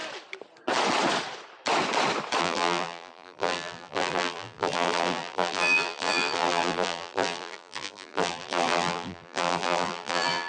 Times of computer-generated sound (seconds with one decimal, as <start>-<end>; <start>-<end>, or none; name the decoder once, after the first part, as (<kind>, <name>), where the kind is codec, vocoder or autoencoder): 2.4-10.5 (vocoder, BigVGAN v2)